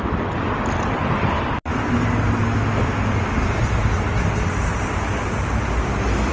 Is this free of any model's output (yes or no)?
yes